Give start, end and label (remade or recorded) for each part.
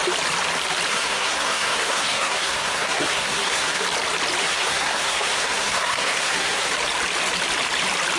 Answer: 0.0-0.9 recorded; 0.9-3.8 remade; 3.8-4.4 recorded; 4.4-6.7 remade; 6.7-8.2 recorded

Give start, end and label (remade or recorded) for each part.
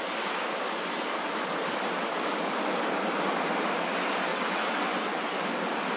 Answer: 0.0-4.3 recorded; 4.3-5.5 remade; 5.5-6.0 recorded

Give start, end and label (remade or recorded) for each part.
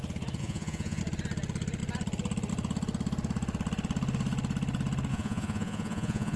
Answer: 0.0-0.4 recorded; 0.4-1.0 remade; 1.0-5.1 recorded; 5.1-6.4 remade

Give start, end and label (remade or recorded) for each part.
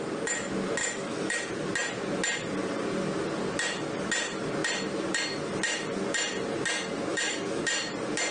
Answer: 0.0-0.8 recorded; 0.8-1.5 remade; 1.5-7.1 recorded; 7.1-7.6 remade; 7.6-8.3 recorded